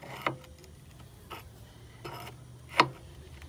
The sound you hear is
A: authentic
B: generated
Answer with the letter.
A